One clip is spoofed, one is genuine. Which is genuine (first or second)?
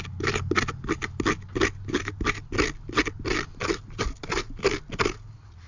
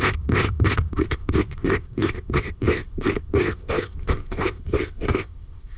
first